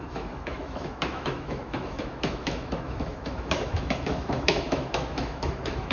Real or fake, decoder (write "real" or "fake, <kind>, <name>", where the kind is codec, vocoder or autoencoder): fake, autoencoder, DAC-VAE